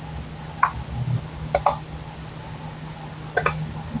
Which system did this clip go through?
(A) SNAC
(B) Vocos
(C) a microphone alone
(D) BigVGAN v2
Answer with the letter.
C